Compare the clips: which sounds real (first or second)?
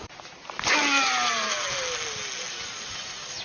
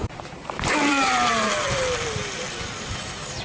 first